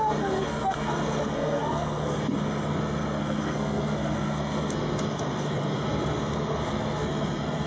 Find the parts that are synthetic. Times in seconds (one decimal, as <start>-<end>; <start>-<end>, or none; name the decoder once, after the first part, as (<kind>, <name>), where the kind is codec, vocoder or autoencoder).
0.0-7.7 (codec, SNAC)